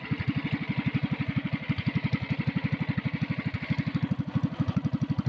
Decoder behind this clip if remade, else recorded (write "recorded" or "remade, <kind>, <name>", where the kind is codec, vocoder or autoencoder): recorded